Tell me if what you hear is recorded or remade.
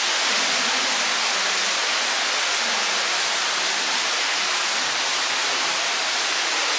recorded